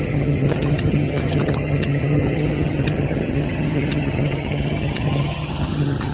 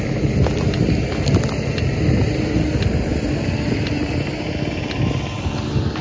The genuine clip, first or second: second